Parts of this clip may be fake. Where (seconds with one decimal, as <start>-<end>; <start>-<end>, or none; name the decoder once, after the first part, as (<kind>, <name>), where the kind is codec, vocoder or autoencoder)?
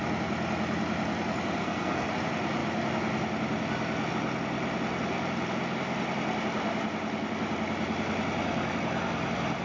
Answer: 1.6-2.1 (codec, SNAC)